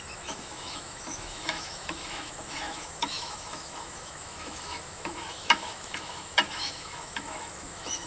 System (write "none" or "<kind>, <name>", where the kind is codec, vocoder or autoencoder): autoencoder, DAC-VAE